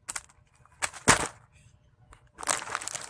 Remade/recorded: recorded